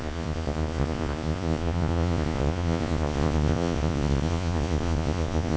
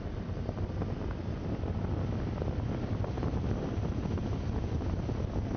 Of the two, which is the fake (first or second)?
first